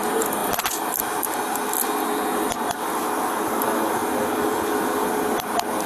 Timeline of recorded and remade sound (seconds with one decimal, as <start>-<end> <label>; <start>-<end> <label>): 0.0-5.9 recorded

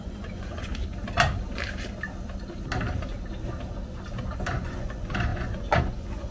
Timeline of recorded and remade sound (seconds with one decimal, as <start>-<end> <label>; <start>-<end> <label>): 0.0-0.7 remade; 0.7-4.5 recorded; 4.5-6.3 remade

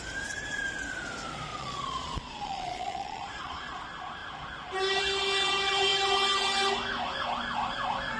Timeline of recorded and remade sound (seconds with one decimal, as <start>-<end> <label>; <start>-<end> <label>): 0.0-1.5 recorded; 1.5-3.8 remade; 3.8-8.2 recorded

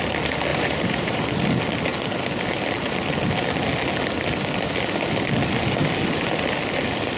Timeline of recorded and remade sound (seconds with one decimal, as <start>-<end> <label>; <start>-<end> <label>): 0.0-0.5 recorded; 0.5-1.3 remade; 1.3-7.2 recorded

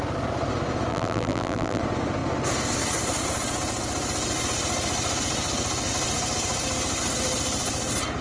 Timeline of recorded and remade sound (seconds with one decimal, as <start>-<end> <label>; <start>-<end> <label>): 0.0-0.9 recorded; 0.9-1.8 remade; 1.8-8.2 recorded

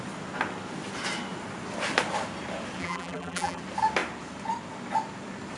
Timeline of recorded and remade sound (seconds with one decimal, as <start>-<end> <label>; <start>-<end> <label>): 0.0-2.8 recorded; 2.8-3.6 remade; 3.6-5.6 recorded

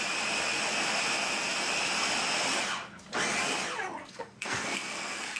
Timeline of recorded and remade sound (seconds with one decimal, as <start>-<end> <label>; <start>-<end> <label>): 0.0-4.0 recorded; 4.0-5.4 remade

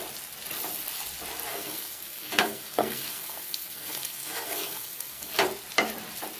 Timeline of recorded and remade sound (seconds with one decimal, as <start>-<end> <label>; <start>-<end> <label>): 0.0-1.5 recorded; 1.5-5.3 remade; 5.3-6.4 recorded